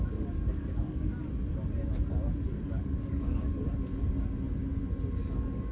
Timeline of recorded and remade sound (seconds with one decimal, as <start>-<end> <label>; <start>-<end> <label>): 0.0-1.2 remade; 1.2-2.6 recorded; 2.6-3.6 remade; 3.6-5.1 recorded; 5.1-5.7 remade

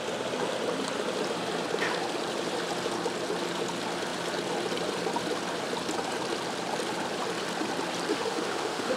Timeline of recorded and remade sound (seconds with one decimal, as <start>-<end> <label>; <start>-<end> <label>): 0.0-8.1 recorded; 8.1-9.0 remade